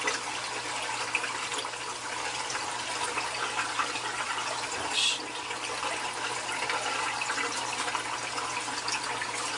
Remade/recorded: remade